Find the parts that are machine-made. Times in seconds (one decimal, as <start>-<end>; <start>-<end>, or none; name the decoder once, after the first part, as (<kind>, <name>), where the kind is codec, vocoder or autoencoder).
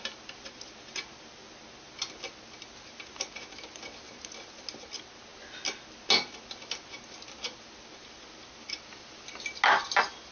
none